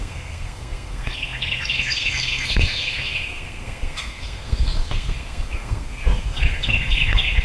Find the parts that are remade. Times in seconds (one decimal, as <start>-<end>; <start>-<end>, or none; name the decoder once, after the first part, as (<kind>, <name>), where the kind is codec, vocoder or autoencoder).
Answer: 0.0-7.4 (codec, SNAC)